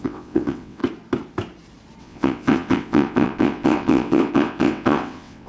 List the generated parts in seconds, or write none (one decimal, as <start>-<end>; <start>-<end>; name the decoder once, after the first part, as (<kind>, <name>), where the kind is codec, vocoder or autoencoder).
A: 0.0-0.8 (vocoder, WaveNeXt); 2.0-5.5